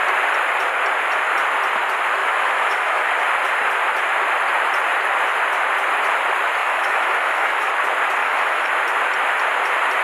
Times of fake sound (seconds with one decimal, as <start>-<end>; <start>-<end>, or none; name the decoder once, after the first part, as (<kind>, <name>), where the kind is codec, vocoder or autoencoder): 2.2-3.1 (autoencoder, DAC-VAE); 6.6-7.7; 8.2-8.7